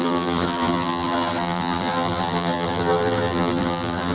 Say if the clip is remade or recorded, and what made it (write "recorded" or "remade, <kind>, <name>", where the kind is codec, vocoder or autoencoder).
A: remade, vocoder, BigVGAN v2